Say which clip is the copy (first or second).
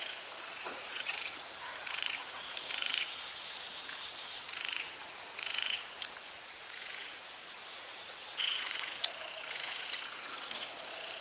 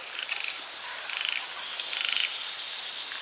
first